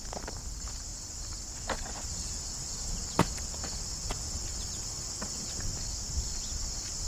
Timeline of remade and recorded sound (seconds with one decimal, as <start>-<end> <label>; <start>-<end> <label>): 0.0-7.1 recorded